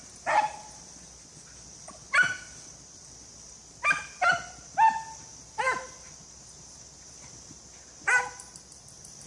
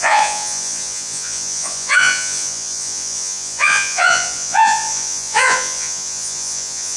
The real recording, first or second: first